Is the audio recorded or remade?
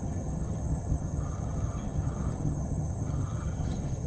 remade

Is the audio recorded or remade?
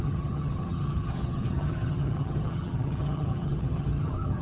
remade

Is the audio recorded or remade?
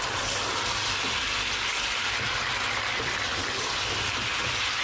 recorded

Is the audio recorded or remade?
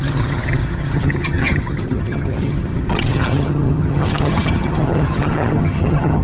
remade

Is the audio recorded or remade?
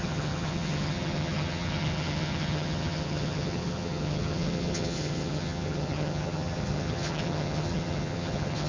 remade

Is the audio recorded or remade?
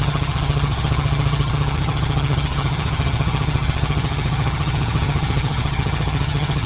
remade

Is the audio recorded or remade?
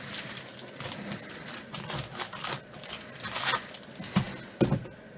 recorded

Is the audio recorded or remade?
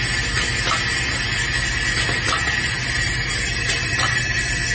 recorded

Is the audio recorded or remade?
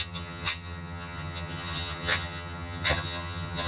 remade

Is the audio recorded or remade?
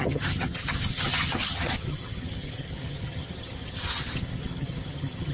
remade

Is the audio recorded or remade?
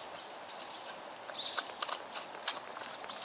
recorded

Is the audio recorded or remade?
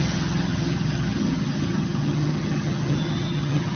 remade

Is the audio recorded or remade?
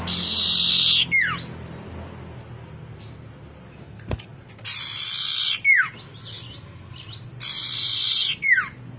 recorded